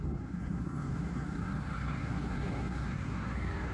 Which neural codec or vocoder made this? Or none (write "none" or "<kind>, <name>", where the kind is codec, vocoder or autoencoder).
codec, SNAC